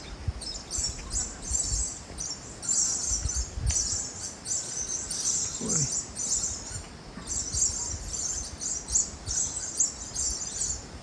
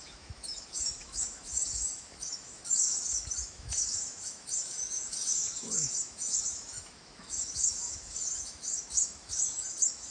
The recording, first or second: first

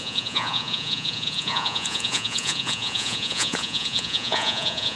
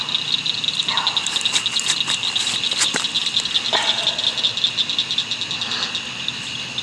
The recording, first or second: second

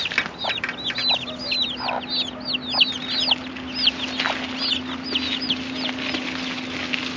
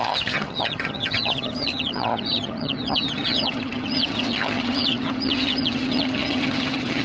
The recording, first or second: first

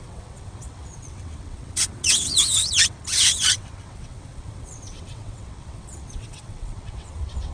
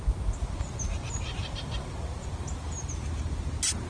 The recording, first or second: second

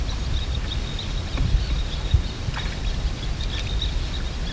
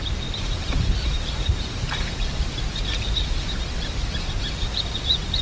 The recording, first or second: first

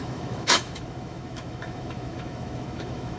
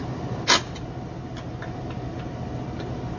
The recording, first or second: second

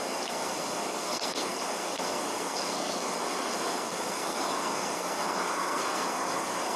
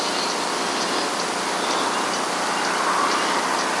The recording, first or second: second